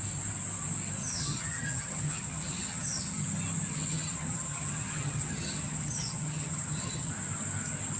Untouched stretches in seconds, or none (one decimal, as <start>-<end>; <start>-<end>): 0.0-1.0; 3.2-3.7; 7.1-8.0